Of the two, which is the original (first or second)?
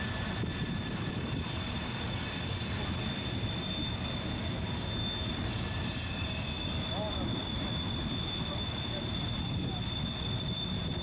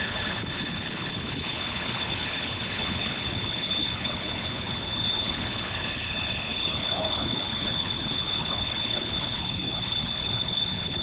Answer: first